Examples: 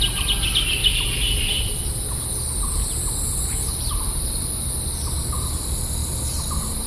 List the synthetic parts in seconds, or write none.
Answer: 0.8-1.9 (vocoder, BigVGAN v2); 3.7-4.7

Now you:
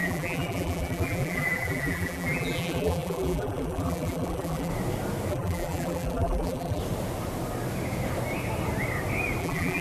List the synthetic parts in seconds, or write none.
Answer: 0.0-4.7 (vocoder, BigVGAN v2); 5.3-6.8; 9.4-9.8

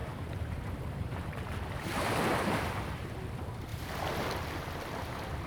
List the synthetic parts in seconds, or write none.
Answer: 0.0-3.1 (vocoder, BigVGAN v2)

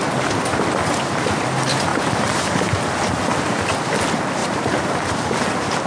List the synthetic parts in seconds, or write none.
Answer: 1.9-2.5 (vocoder, BigVGAN v2); 4.4-5.1

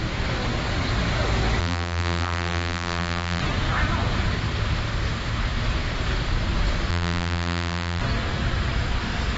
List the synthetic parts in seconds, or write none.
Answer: 1.6-3.4 (vocoder, BigVGAN v2); 6.9-8.0